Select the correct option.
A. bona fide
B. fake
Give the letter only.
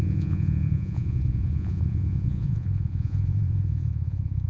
B